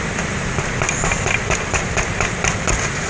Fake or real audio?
real